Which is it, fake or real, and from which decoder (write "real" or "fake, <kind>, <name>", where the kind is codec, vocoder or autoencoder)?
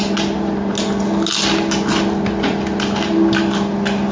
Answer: real